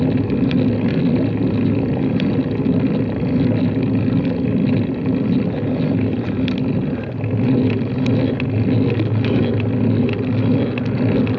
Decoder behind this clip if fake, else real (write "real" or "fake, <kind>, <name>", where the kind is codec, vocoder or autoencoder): real